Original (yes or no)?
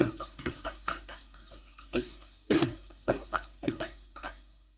no